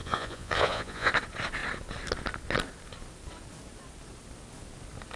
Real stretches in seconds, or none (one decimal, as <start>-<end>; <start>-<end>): 1.1-5.2